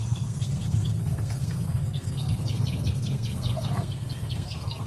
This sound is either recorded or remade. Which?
remade